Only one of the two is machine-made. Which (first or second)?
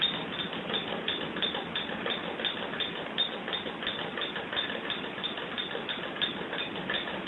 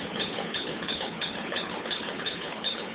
second